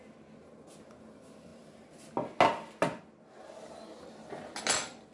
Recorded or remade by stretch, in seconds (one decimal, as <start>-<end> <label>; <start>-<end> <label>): 0.0-5.1 recorded